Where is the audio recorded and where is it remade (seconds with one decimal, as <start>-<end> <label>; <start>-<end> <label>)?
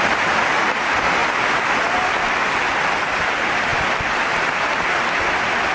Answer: 0.0-5.7 recorded